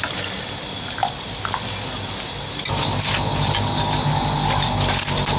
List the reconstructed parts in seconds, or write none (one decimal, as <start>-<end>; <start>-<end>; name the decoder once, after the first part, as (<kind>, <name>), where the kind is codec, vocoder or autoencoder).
none